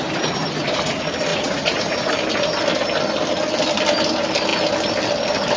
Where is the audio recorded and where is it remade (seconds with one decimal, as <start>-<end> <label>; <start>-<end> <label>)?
0.0-1.3 recorded; 1.3-2.1 remade; 2.1-5.6 recorded